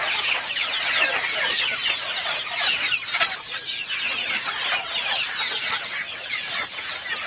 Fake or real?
real